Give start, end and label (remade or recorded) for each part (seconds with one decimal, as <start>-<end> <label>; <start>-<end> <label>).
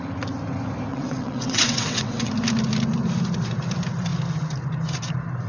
0.0-0.9 recorded; 0.9-2.3 remade; 2.3-5.5 recorded